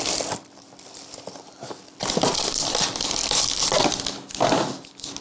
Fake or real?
fake